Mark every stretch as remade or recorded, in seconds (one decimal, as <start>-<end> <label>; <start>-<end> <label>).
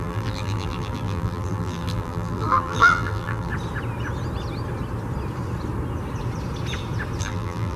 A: 0.0-3.5 remade; 3.5-7.2 recorded; 7.2-7.8 remade